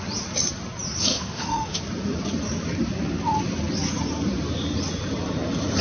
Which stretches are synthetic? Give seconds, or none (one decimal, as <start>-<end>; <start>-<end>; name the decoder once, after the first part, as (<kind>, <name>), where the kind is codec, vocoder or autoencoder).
1.1-1.8 (autoencoder, DAC-VAE)